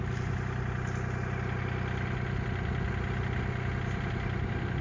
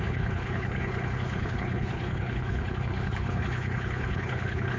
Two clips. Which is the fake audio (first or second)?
second